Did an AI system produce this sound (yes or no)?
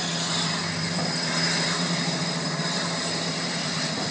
yes